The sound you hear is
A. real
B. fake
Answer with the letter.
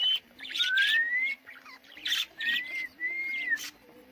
B